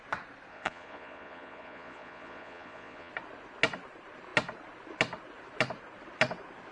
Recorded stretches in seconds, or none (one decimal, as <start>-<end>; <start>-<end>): 0.0-0.5; 3.1-6.7